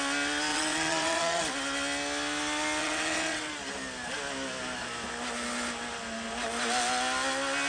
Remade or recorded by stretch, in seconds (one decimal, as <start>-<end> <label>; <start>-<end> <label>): 0.0-0.5 recorded; 0.5-1.4 remade; 1.4-2.8 recorded; 2.8-3.5 remade; 3.5-7.7 recorded